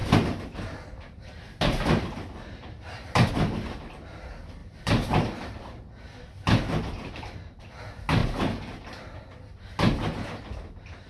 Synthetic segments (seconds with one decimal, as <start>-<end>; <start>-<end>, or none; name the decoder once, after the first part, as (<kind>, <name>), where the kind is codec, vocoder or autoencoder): 0.0-3.3 (vocoder, BigVGAN v2); 4.6-7.8; 8.2-9.7